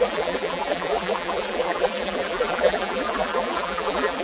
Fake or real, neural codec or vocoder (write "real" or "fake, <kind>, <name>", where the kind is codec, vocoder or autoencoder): fake, vocoder, BigVGAN v2